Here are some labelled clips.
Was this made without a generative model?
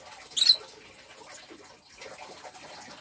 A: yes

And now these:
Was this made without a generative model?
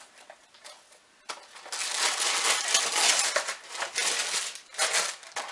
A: yes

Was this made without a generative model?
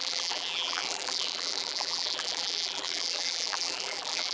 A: no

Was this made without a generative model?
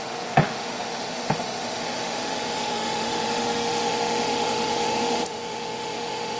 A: no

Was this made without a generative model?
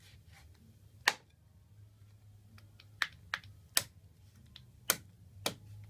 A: yes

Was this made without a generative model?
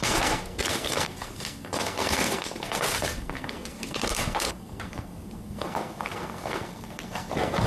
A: no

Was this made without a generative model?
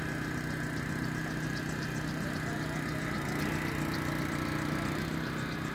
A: yes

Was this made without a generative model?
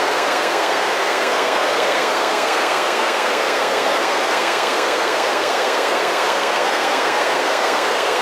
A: no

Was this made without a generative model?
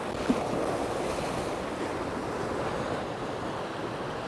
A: yes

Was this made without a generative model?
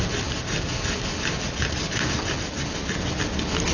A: yes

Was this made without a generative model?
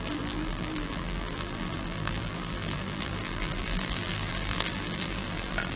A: no